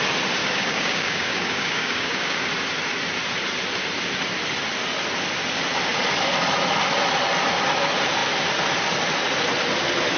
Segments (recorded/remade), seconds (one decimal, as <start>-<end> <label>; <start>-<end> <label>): 0.0-0.4 recorded; 0.4-2.4 remade; 2.4-10.2 recorded